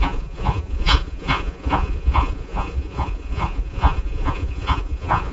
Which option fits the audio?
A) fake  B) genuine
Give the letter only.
A